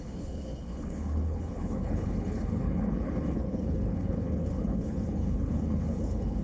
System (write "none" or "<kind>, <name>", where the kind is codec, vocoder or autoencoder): codec, HILCodec